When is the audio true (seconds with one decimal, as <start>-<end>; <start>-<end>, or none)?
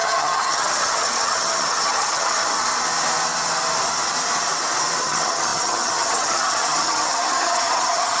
2.6-5.0